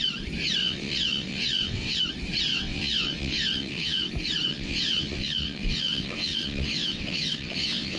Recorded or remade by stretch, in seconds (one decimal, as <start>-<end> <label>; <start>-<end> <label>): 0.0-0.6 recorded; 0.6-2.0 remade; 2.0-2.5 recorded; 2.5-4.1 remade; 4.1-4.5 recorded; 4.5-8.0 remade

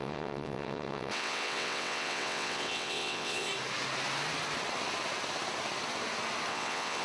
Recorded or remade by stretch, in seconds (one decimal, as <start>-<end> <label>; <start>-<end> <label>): 0.0-3.5 remade; 3.5-6.5 recorded; 6.5-7.0 remade

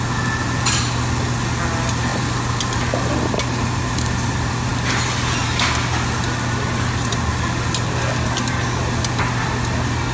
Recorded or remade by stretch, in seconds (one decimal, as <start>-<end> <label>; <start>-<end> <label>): 0.0-10.1 recorded

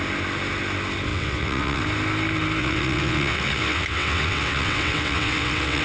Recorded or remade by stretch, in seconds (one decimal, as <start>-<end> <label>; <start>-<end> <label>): 0.0-1.1 recorded; 1.1-1.8 remade; 1.8-2.6 recorded; 2.6-5.8 remade

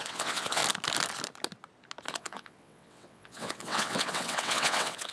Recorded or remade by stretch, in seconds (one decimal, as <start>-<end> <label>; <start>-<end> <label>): 0.0-0.6 remade; 0.6-2.1 recorded; 2.1-5.1 remade

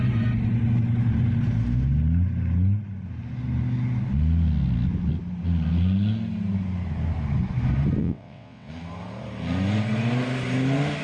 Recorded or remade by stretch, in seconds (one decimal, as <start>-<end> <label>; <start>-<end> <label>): 0.0-8.0 recorded; 8.0-8.7 remade; 8.7-11.0 recorded

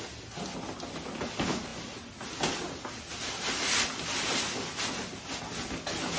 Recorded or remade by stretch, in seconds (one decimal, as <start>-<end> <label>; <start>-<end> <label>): 0.0-6.2 recorded